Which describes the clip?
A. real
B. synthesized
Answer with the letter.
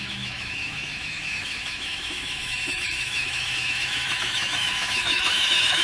B